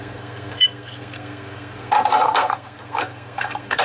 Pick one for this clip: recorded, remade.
remade